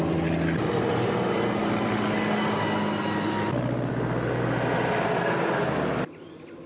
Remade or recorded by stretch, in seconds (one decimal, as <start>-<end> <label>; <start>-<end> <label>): 0.0-6.7 recorded